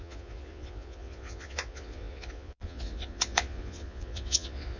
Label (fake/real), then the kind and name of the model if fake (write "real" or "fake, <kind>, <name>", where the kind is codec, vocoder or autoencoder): fake, vocoder, Vocos